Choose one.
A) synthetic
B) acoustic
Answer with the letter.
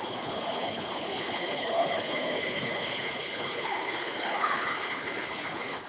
A